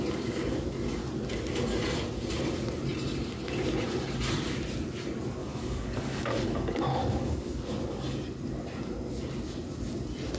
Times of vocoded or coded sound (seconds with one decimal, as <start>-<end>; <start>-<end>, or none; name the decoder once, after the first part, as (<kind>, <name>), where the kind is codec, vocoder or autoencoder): 5.4-7.6 (codec, DAC)